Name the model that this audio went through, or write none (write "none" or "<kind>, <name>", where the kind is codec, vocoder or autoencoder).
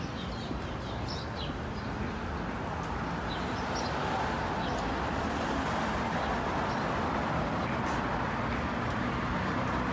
none